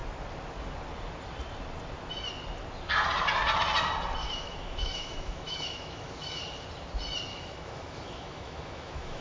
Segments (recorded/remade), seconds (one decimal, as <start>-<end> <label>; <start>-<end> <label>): 0.0-4.2 recorded; 4.2-6.4 remade; 6.4-7.3 recorded; 7.3-9.2 remade